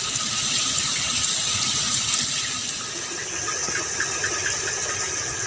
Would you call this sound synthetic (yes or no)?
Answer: no